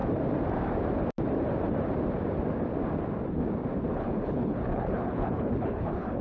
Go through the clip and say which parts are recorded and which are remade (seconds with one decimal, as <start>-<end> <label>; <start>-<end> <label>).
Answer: 0.0-3.9 recorded; 3.9-6.2 remade